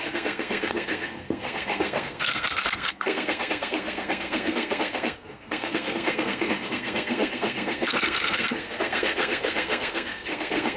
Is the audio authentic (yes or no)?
no